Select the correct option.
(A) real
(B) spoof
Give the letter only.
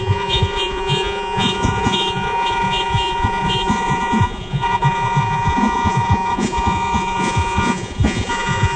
B